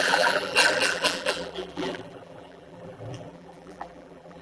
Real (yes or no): no